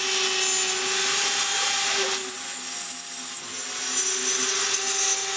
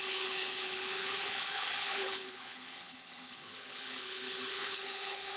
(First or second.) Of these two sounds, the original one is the first